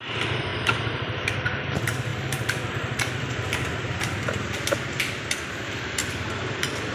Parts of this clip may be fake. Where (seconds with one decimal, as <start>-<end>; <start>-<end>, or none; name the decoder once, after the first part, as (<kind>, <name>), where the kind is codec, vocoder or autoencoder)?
0.0-6.0 (vocoder, BigVGAN v2)